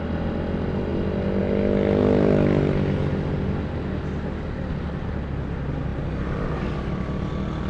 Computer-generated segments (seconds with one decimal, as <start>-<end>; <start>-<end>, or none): none